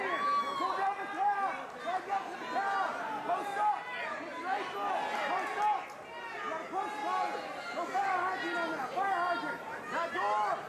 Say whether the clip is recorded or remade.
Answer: recorded